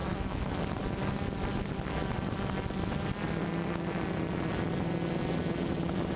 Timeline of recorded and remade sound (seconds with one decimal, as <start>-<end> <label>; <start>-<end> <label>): 0.0-0.5 remade; 0.5-6.2 recorded